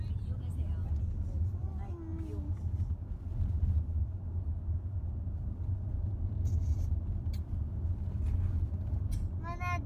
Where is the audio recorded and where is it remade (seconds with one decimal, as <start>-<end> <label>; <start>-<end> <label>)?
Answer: 0.0-9.9 recorded

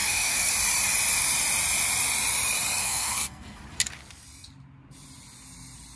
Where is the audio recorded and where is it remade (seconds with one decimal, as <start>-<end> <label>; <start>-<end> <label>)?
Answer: 0.0-0.5 remade; 0.5-2.8 recorded; 2.8-3.6 remade; 3.6-6.0 recorded